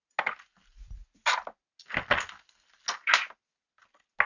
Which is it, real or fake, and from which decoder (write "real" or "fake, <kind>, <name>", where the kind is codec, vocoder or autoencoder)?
real